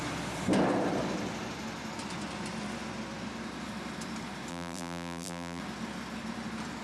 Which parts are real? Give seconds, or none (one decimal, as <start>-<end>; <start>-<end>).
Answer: 0.0-4.5; 5.6-6.8